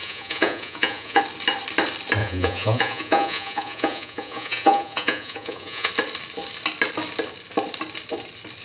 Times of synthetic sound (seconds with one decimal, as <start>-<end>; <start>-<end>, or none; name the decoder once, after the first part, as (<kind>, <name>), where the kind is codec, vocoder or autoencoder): 0.0-1.2 (vocoder, Vocos); 2.2-5.9